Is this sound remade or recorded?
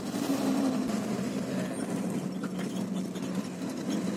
recorded